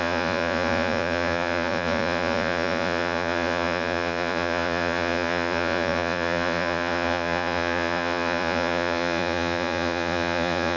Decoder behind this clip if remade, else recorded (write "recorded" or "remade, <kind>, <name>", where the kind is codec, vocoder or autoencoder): remade, vocoder, Vocos